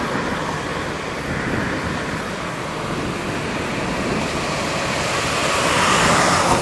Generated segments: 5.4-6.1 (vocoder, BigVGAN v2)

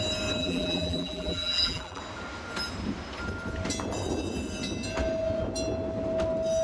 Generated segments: 0.4-2.0 (vocoder, BigVGAN v2)

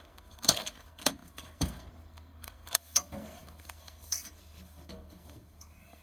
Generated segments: 0.0-6.0 (codec, SNAC)

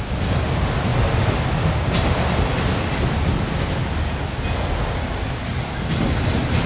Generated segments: none